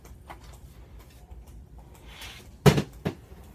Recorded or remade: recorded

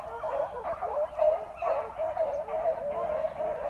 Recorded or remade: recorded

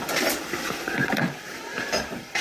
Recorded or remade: recorded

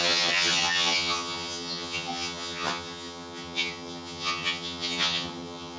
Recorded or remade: remade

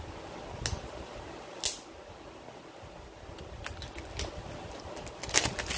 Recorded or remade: recorded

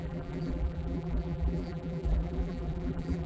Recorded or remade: remade